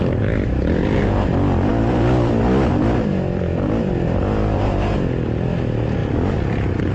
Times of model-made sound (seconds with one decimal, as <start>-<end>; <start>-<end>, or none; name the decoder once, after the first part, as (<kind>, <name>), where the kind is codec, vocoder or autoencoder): none